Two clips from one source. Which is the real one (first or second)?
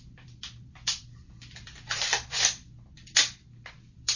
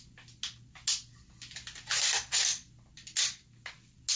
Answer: second